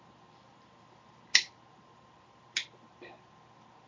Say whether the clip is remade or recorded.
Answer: recorded